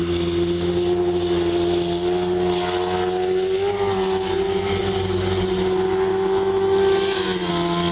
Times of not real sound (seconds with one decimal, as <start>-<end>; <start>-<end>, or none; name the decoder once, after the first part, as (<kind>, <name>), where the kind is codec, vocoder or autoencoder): 6.1-7.5 (autoencoder, DAC-VAE)